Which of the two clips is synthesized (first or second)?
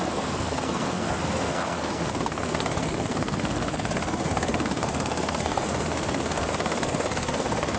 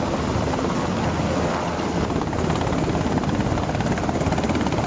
first